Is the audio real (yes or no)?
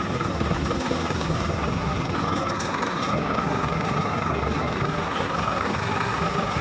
no